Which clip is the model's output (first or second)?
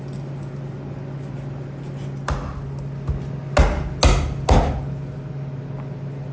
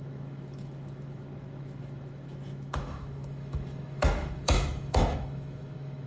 second